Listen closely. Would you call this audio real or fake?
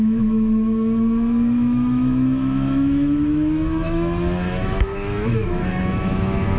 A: fake